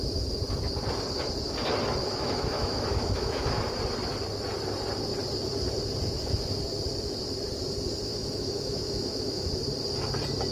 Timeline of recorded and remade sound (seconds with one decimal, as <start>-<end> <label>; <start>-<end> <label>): 0.0-2.0 recorded; 2.0-3.6 remade; 3.6-8.1 recorded; 8.1-9.6 remade; 9.6-10.5 recorded